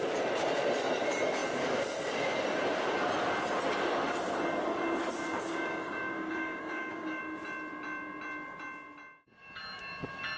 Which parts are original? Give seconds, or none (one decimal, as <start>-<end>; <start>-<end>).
0.0-5.3; 7.2-10.4